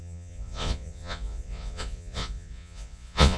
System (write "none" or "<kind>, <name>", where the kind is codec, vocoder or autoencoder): vocoder, Vocos